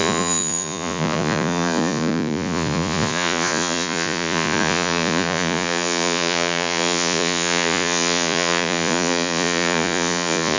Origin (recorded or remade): remade